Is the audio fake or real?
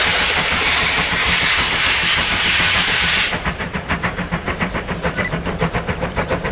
fake